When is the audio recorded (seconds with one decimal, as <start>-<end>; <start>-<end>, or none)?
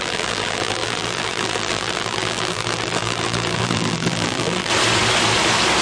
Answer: 4.7-5.8